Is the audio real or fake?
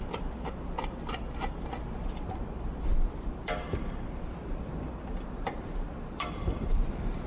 fake